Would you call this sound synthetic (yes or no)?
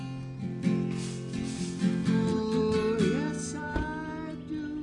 no